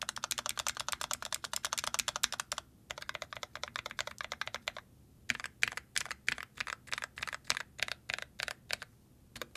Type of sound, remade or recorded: recorded